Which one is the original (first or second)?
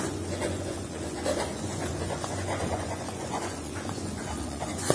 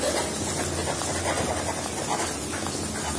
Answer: second